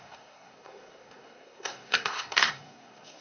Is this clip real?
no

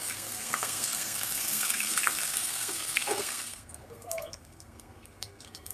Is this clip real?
no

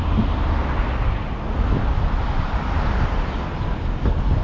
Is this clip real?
yes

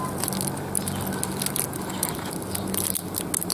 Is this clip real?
yes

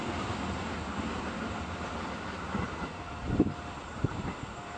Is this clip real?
yes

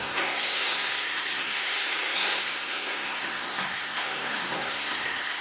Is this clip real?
no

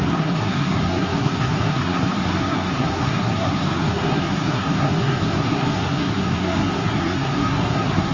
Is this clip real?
no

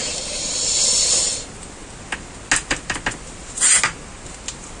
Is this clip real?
yes